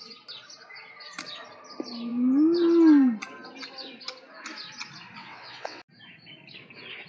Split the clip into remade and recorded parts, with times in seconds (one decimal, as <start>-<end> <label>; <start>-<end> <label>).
0.0-5.2 recorded; 5.2-5.8 remade; 5.8-7.1 recorded

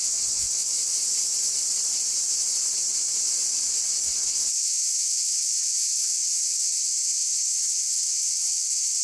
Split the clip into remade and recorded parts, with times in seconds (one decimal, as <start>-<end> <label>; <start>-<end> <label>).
0.0-0.9 remade; 0.9-4.0 recorded; 4.0-9.0 remade